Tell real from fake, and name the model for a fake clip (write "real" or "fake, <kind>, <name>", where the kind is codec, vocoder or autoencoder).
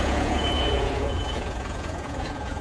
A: fake, vocoder, Vocos